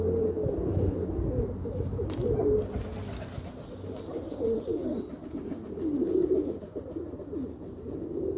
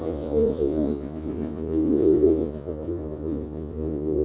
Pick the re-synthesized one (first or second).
second